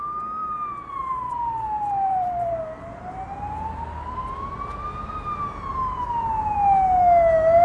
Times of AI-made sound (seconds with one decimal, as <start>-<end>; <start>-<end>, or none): 0.4-2.6